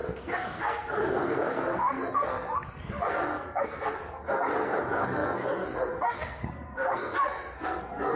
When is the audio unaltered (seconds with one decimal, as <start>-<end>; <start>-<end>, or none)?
none